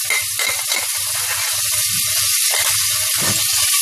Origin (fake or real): real